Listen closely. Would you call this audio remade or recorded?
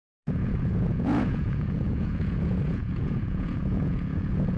remade